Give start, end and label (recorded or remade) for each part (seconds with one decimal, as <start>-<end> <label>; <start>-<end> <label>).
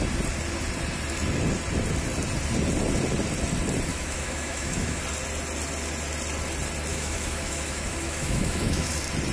0.0-3.9 recorded; 3.9-5.0 remade; 5.0-6.9 recorded; 6.9-8.9 remade; 8.9-9.3 recorded